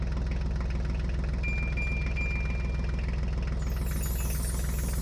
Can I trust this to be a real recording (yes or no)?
yes